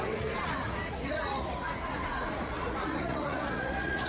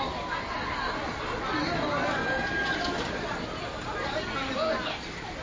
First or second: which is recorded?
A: second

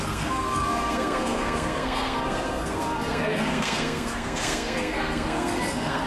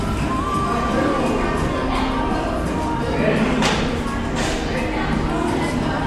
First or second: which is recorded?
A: second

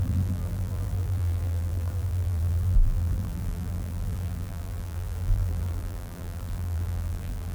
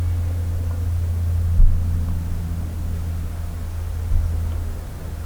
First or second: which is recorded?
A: second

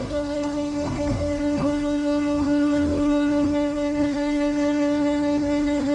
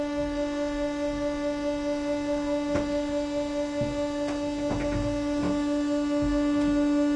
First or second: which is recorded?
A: second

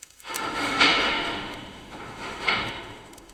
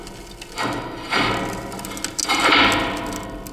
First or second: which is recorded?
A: second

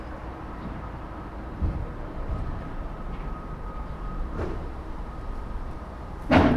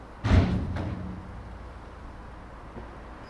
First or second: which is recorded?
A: second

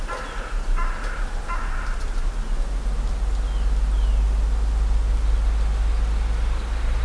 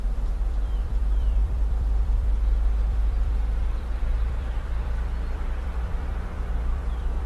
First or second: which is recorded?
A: first